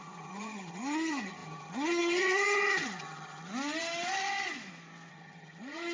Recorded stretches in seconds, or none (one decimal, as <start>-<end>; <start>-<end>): 3.5-5.1